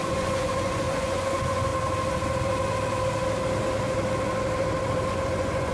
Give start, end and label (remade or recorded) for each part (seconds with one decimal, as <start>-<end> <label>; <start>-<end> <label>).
0.0-1.7 remade; 1.7-5.1 recorded; 5.1-5.7 remade